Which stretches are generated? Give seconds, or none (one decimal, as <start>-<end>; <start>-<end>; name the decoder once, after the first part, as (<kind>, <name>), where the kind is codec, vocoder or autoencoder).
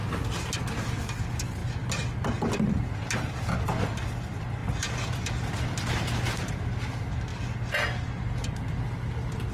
none